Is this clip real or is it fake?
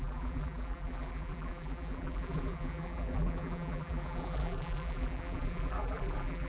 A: fake